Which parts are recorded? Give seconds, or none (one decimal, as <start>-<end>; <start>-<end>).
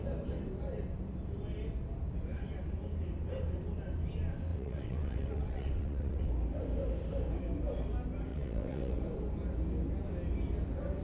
0.0-4.5; 6.3-8.3; 9.0-11.0